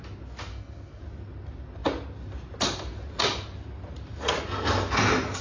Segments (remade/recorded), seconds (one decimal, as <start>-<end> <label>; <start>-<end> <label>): 0.0-0.5 recorded; 0.5-1.0 remade; 1.0-5.4 recorded